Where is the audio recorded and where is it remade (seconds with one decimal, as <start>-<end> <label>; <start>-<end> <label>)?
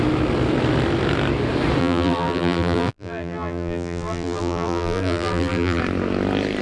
0.0-1.8 recorded; 1.8-5.8 remade; 5.8-6.6 recorded